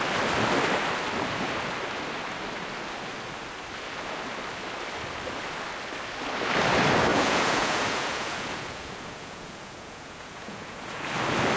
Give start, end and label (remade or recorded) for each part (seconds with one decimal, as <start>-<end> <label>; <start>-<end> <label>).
0.0-7.1 recorded; 7.1-11.1 remade; 11.1-11.6 recorded